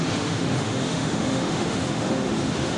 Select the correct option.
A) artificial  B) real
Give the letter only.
A